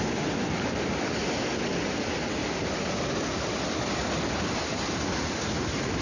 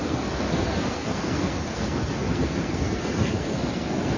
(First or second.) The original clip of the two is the first